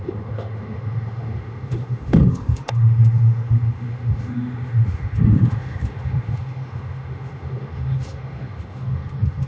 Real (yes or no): no